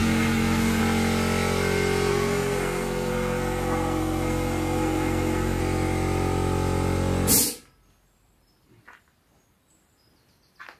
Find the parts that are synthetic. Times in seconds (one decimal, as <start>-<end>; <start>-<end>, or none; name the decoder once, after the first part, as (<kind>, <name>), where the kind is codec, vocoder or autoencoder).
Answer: 0.0-0.8 (codec, SNAC); 2.1-5.6